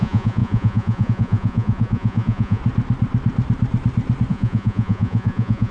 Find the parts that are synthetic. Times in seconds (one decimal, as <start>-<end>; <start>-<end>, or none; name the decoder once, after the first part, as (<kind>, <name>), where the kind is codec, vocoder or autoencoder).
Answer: 0.0-2.6 (vocoder, Vocos); 4.3-5.7